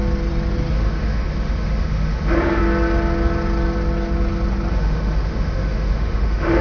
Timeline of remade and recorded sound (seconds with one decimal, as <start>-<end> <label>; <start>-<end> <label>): 0.0-0.7 recorded; 0.7-2.6 remade; 2.6-4.7 recorded; 4.7-6.6 remade